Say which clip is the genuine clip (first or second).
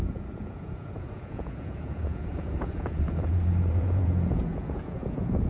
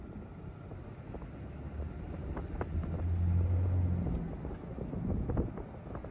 second